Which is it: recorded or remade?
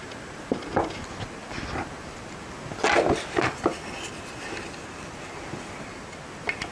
recorded